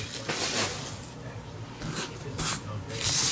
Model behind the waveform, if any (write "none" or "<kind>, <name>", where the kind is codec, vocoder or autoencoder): none